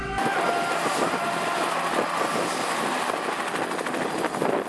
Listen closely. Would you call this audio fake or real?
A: real